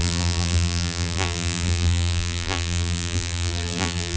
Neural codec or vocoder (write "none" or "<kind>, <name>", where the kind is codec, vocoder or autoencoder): vocoder, BigVGAN v2